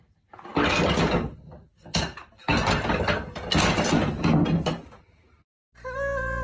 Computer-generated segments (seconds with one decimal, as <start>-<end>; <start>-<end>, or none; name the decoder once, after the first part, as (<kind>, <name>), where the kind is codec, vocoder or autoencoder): none